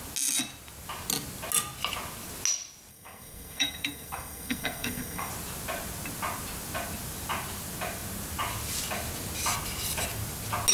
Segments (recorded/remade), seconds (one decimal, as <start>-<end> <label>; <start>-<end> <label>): 0.0-2.9 recorded; 2.9-5.3 remade; 5.3-10.7 recorded